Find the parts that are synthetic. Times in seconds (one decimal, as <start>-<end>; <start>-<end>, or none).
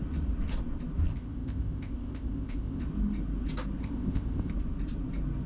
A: 1.1-2.8; 3.8-4.5